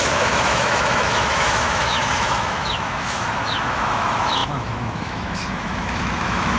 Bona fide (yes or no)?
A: no